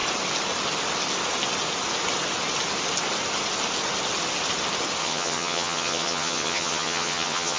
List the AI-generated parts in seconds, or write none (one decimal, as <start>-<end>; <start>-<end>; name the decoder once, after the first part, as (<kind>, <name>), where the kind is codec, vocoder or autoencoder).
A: 5.0-7.6 (vocoder, HiFi-GAN)